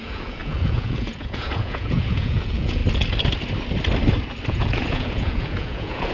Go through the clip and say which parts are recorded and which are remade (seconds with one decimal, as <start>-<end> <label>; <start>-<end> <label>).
0.0-2.8 remade; 2.8-4.5 recorded; 4.5-6.1 remade